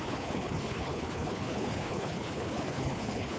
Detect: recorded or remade remade